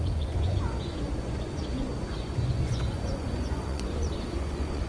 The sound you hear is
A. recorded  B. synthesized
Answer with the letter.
B